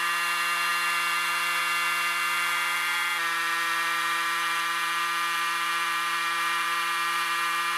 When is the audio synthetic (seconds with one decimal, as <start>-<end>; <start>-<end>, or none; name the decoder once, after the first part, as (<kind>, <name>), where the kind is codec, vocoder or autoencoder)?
0.0-7.8 (vocoder, BigVGAN v2)